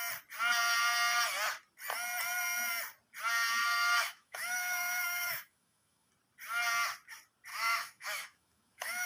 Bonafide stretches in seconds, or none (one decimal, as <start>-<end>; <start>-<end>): 0.0-3.6; 6.1-7.5